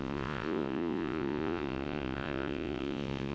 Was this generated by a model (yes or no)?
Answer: yes